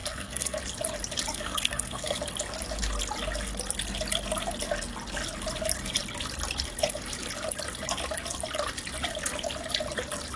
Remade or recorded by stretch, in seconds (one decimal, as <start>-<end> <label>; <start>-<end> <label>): 0.0-0.6 remade; 0.6-1.3 recorded; 1.3-2.2 remade; 2.2-10.4 recorded